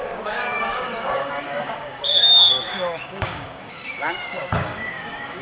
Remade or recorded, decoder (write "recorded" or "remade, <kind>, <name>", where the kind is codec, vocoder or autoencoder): remade, codec, DAC